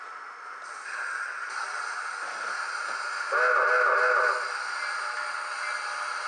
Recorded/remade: recorded